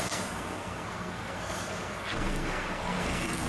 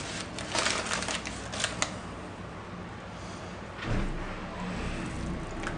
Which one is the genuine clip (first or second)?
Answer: second